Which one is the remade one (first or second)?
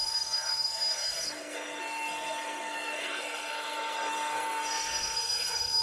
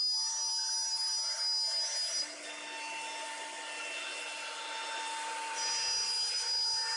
first